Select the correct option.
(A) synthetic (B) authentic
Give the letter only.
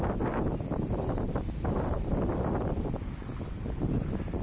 B